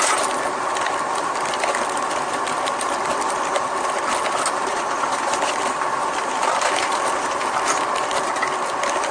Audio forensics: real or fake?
real